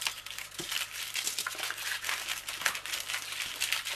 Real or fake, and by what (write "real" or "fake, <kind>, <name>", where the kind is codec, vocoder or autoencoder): real